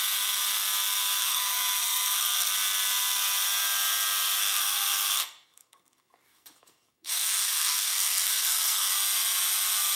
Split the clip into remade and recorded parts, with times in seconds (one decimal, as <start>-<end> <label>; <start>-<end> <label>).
0.0-1.2 recorded; 1.2-2.5 remade; 2.5-4.4 recorded; 4.4-8.9 remade; 8.9-10.0 recorded